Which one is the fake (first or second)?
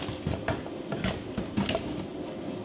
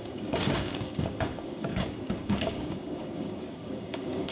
second